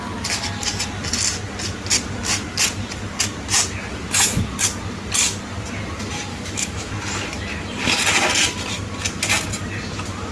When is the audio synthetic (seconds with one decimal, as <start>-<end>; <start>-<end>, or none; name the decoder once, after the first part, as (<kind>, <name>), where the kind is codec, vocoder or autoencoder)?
6.3-6.9 (autoencoder, DAC-VAE)